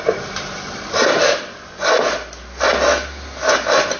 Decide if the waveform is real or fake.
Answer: real